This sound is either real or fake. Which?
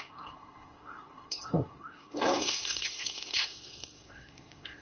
fake